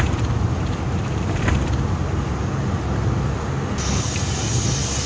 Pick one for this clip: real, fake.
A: real